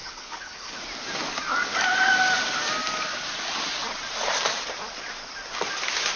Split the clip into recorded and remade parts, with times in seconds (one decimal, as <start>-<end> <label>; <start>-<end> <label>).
0.0-0.8 remade; 0.8-6.2 recorded